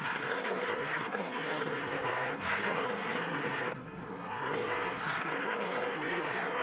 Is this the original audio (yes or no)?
no